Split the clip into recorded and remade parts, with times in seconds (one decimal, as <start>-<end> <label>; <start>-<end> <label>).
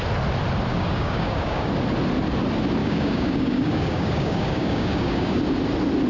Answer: 0.0-0.7 recorded; 0.7-1.7 remade; 1.7-2.8 recorded; 2.8-5.4 remade; 5.4-6.1 recorded